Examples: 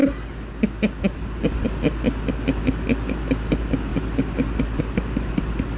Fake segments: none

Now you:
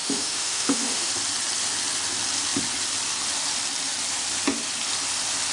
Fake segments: 0.0-1.1 (autoencoder, DAC-VAE)

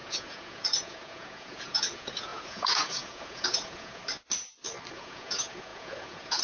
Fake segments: 0.0-4.0 (vocoder, Vocos); 4.9-6.4

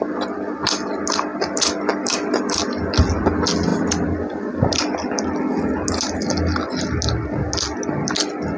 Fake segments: 1.3-2.4 (vocoder, BigVGAN v2); 3.7-4.7

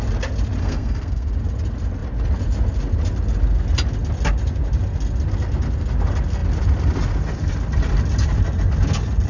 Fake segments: 0.6-1.3 (codec, SNAC)

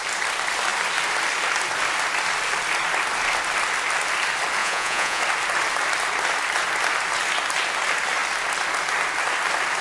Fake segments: 4.6-5.2 (vocoder, Vocos)

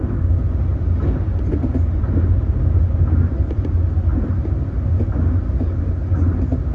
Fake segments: none